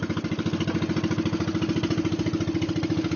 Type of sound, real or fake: real